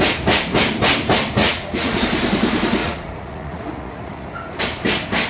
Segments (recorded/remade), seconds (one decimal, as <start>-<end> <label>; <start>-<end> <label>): 0.0-1.4 recorded; 1.4-2.0 remade; 2.0-2.8 recorded; 2.8-4.6 remade; 4.6-5.3 recorded